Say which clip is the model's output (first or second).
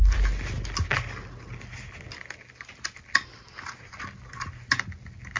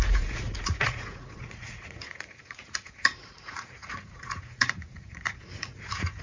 second